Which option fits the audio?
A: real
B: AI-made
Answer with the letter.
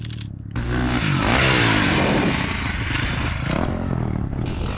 A